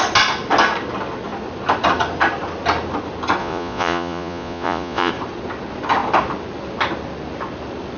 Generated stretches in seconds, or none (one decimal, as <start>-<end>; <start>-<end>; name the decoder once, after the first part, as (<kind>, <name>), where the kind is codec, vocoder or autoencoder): 3.4-5.1 (vocoder, Vocos)